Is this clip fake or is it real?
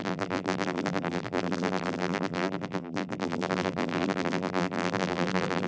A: fake